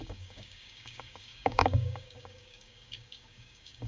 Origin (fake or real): fake